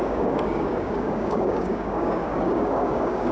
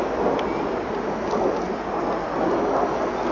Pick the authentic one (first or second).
second